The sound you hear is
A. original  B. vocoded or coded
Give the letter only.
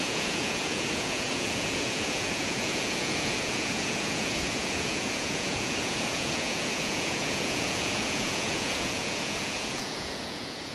B